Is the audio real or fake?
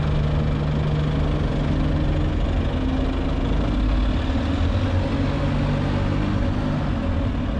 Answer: real